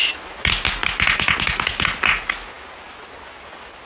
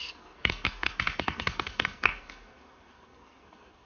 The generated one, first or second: second